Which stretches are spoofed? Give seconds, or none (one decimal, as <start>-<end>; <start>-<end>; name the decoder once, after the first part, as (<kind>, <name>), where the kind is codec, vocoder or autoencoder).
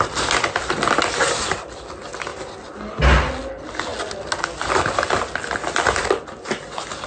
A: none